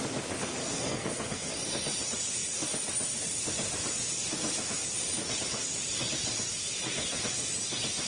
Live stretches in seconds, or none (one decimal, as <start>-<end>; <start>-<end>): 0.0-0.6; 1.5-8.1